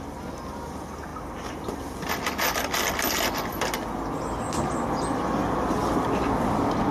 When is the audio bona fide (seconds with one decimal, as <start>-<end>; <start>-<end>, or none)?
0.0-6.9